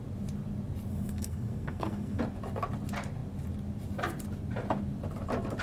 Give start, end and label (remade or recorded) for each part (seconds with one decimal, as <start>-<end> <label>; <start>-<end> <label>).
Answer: 0.0-0.9 recorded; 0.9-2.2 remade; 2.2-5.6 recorded